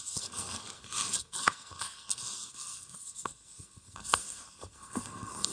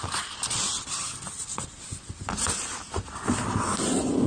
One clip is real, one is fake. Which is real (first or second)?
second